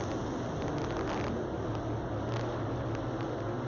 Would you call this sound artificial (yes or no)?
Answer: no